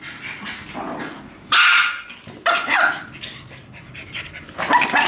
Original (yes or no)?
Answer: yes